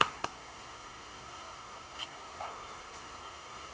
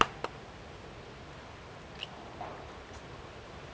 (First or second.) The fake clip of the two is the first